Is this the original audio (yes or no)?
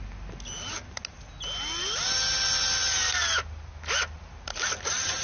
yes